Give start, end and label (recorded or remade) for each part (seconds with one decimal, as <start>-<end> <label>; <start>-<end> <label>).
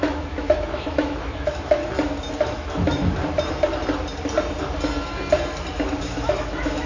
0.0-1.8 remade; 1.8-2.3 recorded; 2.3-3.2 remade; 3.2-6.0 recorded; 6.0-6.9 remade